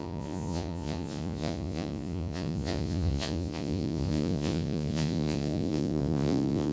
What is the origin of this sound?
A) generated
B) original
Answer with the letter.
A